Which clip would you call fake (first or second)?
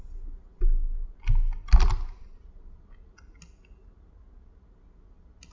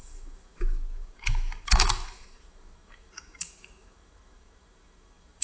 second